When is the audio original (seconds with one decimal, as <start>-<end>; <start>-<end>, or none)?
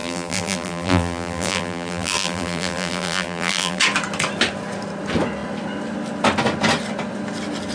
3.8-7.7